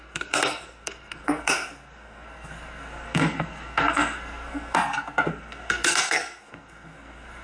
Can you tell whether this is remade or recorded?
remade